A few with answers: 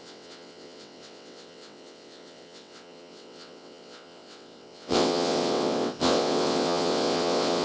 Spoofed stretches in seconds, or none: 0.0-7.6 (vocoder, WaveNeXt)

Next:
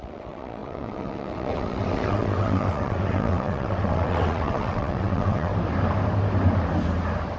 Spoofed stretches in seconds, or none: 0.0-5.5 (vocoder, WaveNeXt)

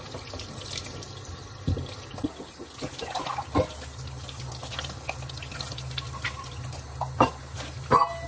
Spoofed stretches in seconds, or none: none

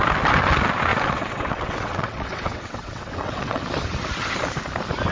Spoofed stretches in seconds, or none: 0.9-3.6 (vocoder, WaveNeXt)

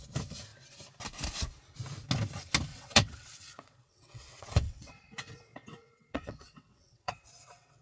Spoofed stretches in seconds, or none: 2.7-7.8 (vocoder, WaveNeXt)

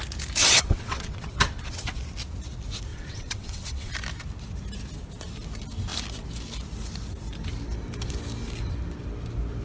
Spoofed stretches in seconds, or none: 0.4-2.0 (vocoder, WaveNeXt); 2.9-3.9